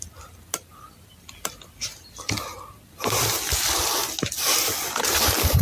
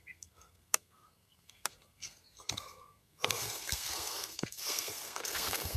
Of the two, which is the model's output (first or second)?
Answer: second